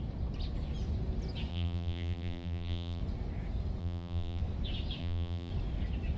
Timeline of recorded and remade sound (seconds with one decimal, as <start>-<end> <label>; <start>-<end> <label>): 0.0-1.5 recorded; 1.5-3.0 remade; 3.0-3.8 recorded; 3.8-4.4 remade; 4.4-5.0 recorded; 5.0-5.5 remade; 5.5-6.2 recorded